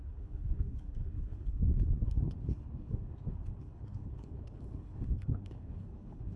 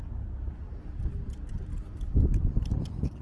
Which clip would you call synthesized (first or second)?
first